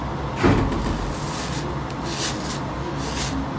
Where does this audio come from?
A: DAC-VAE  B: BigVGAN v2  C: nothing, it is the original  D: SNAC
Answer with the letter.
C